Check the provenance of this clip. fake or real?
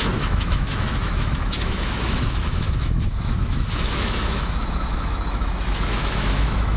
fake